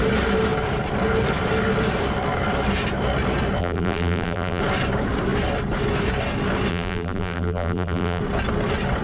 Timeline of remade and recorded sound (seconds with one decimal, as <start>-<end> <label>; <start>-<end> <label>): 0.0-3.6 recorded; 3.6-4.6 remade; 4.6-6.7 recorded; 6.7-8.2 remade; 8.2-9.0 recorded